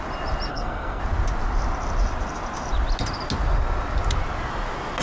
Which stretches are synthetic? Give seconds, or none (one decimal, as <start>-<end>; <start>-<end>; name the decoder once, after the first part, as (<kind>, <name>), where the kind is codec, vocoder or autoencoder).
0.5-1.0 (codec, SNAC)